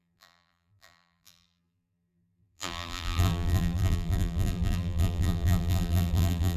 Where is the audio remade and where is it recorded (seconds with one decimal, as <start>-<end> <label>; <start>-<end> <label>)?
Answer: 0.0-6.6 remade